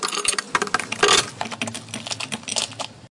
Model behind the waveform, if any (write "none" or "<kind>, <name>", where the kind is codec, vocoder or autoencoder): none